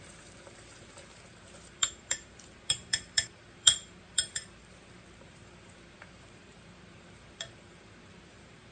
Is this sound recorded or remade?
remade